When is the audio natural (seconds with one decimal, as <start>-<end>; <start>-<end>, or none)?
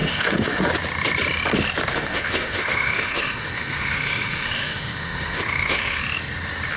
0.6-1.9; 6.0-6.8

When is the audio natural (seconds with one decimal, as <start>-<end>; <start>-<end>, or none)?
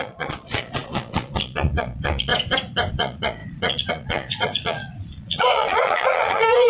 2.3-2.9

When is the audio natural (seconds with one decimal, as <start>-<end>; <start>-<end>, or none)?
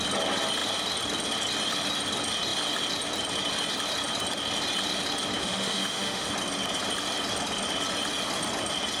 0.0-5.4; 6.3-9.0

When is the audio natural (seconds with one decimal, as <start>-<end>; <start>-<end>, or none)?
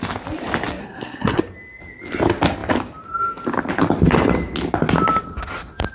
0.0-0.8; 1.4-5.9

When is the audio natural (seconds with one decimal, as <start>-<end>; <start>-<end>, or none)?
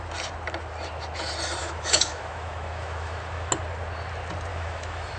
0.0-1.6; 3.5-4.5